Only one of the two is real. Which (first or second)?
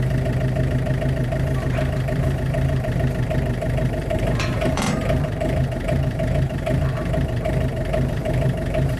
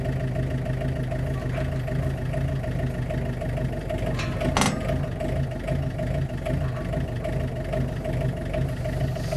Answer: second